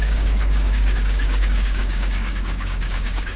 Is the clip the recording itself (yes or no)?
no